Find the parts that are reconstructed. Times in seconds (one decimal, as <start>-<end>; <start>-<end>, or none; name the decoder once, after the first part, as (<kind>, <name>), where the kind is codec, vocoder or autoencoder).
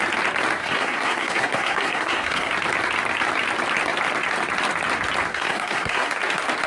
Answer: 0.6-2.5 (codec, SNAC); 5.3-6.1